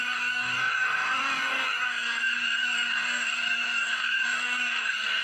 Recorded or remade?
remade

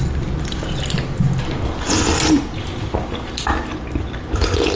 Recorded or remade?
recorded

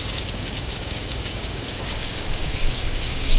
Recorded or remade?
remade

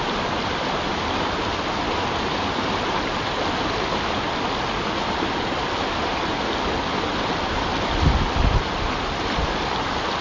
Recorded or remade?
recorded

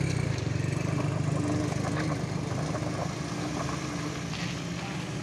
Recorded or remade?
recorded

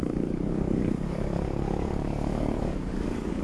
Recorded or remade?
remade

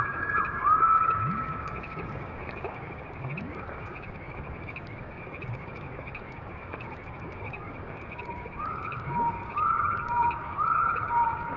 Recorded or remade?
remade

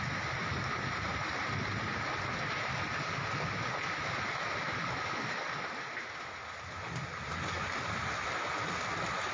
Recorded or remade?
recorded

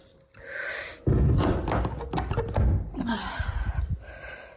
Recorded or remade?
recorded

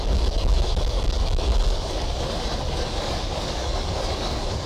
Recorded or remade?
remade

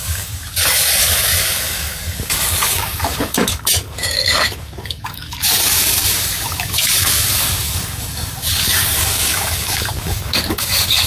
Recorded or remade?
remade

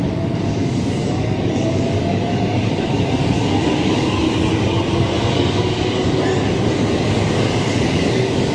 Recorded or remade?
remade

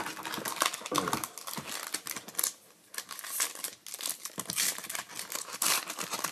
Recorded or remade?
recorded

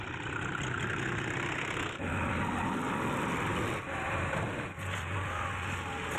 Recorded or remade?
recorded